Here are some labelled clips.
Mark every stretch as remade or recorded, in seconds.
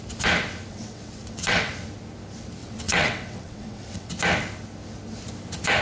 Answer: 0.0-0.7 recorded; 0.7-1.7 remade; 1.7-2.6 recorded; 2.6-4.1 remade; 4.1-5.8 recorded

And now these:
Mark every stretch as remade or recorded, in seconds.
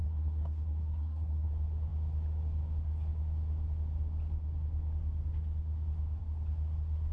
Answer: 0.0-1.5 remade; 1.5-7.1 recorded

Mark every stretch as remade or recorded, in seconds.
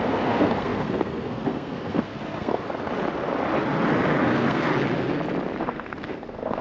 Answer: 0.0-2.6 remade; 2.6-4.2 recorded; 4.2-4.7 remade; 4.7-5.6 recorded; 5.6-6.6 remade